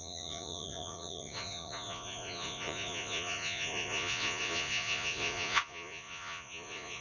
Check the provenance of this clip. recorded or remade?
remade